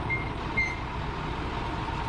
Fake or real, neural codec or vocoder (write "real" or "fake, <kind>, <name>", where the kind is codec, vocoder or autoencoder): real